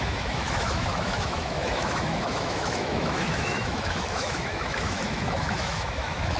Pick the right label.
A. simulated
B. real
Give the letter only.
A